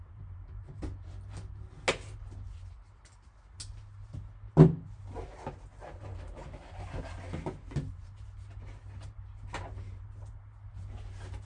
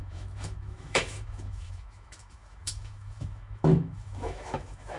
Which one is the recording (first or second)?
first